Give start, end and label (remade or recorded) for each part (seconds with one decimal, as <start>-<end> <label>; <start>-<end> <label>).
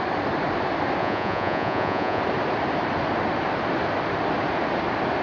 0.0-1.0 recorded; 1.0-2.2 remade; 2.2-5.2 recorded